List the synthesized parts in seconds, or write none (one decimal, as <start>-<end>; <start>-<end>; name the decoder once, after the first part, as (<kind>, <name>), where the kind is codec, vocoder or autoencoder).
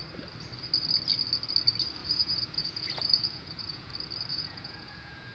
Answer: 2.0-3.9 (vocoder, Vocos); 4.3-5.3